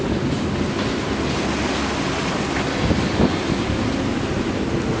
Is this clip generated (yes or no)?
no